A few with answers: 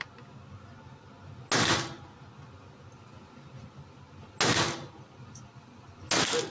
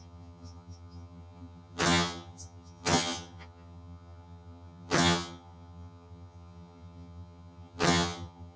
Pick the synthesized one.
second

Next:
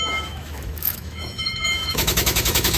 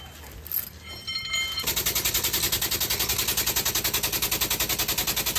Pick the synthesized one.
first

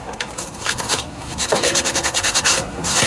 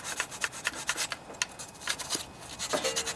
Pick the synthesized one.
first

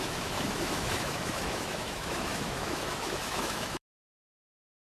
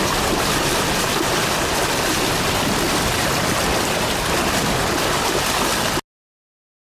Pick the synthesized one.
first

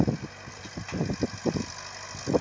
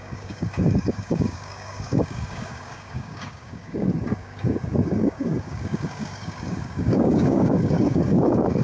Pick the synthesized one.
second